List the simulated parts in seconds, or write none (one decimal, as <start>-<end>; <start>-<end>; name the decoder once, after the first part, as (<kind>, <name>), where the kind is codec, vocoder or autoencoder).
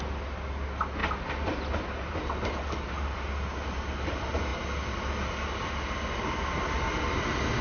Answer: none